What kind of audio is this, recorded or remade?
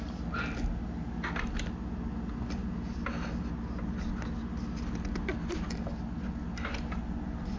recorded